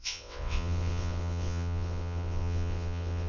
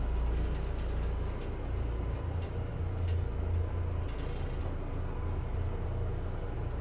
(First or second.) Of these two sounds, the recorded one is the second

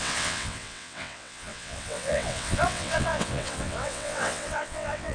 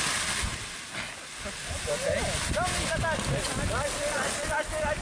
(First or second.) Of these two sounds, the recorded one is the second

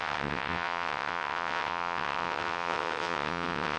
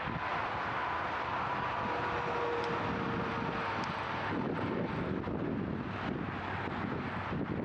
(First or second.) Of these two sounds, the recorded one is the second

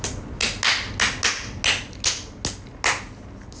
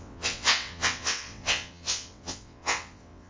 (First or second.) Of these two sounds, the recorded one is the first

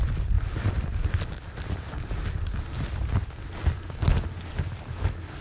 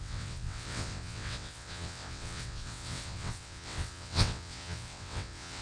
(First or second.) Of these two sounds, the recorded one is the first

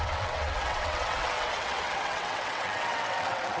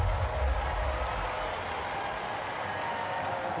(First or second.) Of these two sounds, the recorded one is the second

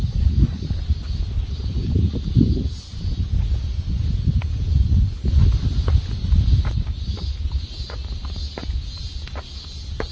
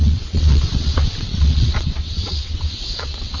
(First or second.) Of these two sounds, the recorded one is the first